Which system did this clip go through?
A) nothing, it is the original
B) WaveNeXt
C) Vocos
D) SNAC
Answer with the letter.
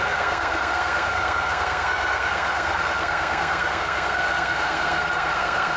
D